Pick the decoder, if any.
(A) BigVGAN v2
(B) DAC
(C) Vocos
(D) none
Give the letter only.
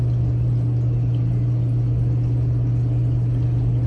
D